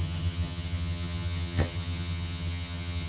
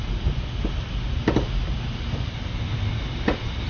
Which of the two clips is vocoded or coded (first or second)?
first